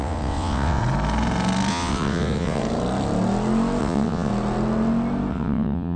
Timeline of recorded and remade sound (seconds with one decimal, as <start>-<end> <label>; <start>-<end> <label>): 0.0-0.8 remade; 0.8-1.7 recorded; 1.7-2.6 remade; 2.6-3.8 recorded; 3.8-4.3 remade; 4.3-5.3 recorded; 5.3-6.0 remade